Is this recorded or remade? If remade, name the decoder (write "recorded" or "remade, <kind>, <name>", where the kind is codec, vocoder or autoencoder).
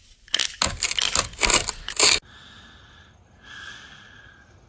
recorded